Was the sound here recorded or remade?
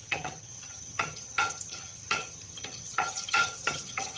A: remade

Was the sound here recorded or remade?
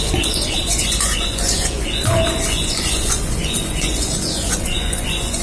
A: remade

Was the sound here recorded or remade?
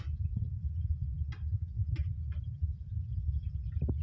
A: remade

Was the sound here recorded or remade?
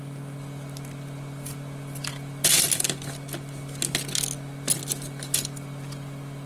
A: recorded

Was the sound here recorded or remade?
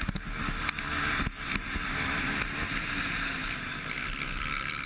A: recorded